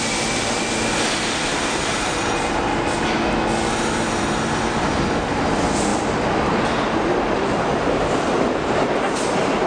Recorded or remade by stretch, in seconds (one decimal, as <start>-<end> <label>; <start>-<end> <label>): 0.0-1.5 recorded; 1.5-2.1 remade; 2.1-9.7 recorded

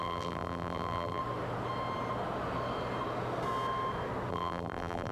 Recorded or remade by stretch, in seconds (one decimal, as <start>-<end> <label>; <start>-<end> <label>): 0.0-1.2 remade; 1.2-4.3 recorded; 4.3-5.1 remade

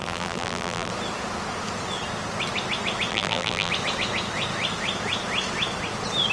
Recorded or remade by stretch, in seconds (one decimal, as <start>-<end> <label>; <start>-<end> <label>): 0.0-0.9 remade; 0.9-3.1 recorded; 3.1-3.7 remade; 3.7-6.3 recorded

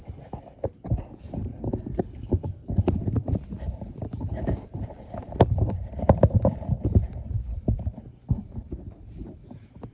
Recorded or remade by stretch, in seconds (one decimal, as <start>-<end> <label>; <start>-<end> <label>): 0.0-1.5 recorded; 1.5-2.0 remade; 2.0-2.6 recorded; 2.6-7.8 remade; 7.8-9.9 recorded

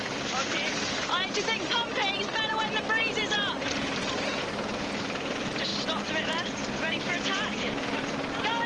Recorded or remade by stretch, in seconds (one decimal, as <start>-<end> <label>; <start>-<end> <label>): 0.0-2.0 remade; 2.0-2.5 recorded; 2.5-5.7 remade; 5.7-6.9 recorded; 6.9-8.7 remade

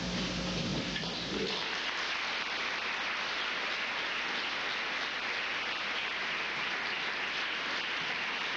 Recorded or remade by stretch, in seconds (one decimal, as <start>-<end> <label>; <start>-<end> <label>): 0.0-8.6 recorded

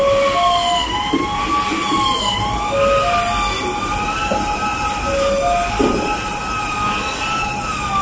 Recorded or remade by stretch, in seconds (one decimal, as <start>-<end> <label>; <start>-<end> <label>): 0.0-8.0 recorded